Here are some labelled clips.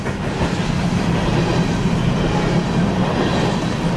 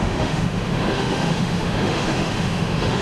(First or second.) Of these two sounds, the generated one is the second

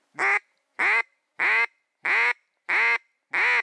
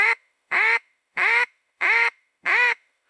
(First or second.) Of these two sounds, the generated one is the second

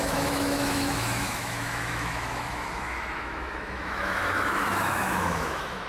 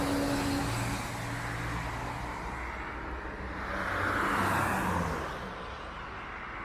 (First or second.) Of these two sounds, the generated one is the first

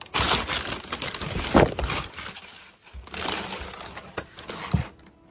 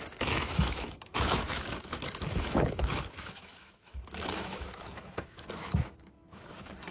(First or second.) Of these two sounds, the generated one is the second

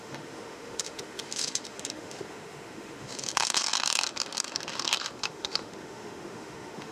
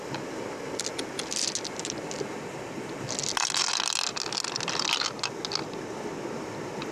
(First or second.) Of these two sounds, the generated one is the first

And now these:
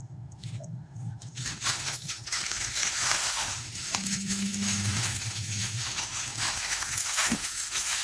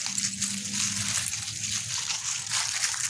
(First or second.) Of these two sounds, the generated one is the first